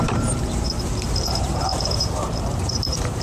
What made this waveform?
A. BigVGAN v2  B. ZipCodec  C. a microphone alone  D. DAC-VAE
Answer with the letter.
A